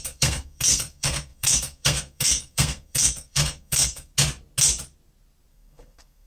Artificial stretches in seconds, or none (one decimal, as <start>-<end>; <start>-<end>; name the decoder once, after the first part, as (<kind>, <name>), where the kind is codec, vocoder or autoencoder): 0.0-4.1 (codec, SNAC); 5.5-6.3